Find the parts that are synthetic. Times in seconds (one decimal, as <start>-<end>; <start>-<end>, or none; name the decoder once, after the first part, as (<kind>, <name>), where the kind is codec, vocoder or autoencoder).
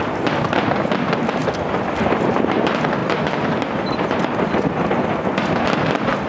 none